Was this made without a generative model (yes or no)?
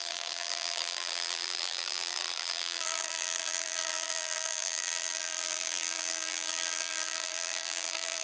no